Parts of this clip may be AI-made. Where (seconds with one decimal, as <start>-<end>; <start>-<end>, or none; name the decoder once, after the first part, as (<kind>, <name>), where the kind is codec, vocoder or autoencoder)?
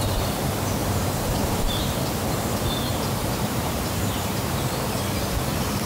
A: 0.8-2.0 (vocoder, BigVGAN v2); 2.9-4.7